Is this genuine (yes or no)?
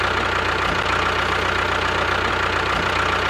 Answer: yes